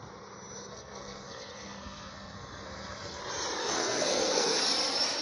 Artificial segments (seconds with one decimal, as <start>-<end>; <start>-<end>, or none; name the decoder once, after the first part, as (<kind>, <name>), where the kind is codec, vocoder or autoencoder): 0.7-3.2 (codec, SNAC); 3.6-4.6